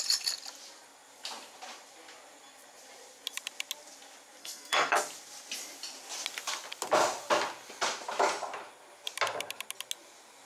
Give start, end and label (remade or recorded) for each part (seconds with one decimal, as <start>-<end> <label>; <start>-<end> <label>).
0.0-4.4 recorded; 4.4-4.9 remade; 4.9-10.5 recorded